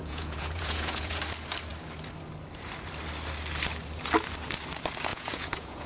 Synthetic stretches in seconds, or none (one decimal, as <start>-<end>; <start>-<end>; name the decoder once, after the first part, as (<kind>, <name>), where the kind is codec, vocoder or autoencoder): 0.0-1.2 (vocoder, Vocos); 5.1-5.9

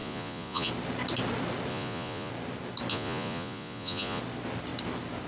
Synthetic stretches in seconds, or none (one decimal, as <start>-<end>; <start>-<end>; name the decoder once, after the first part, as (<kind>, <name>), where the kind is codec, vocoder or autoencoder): 0.0-0.7 (vocoder, Vocos); 1.7-2.3; 2.9-4.2

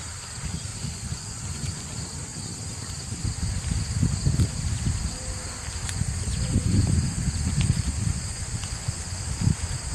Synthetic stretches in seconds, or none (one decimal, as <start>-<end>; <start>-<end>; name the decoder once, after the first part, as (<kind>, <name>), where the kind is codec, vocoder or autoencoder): 0.7-1.9 (vocoder, Vocos); 5.8-9.2

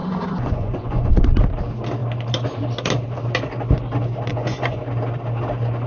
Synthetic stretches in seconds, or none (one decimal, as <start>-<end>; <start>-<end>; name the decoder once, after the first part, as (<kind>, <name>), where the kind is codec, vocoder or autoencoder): 0.0-1.1 (vocoder, Vocos); 4.3-4.8

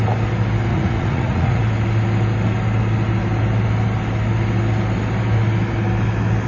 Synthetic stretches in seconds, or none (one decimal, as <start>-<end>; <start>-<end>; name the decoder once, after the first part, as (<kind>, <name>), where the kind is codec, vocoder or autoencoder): 0.7-1.6 (vocoder, Vocos)